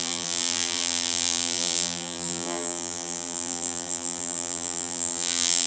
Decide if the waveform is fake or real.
fake